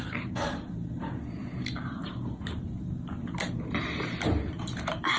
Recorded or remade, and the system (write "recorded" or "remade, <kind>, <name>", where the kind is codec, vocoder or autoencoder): remade, vocoder, BigVGAN v2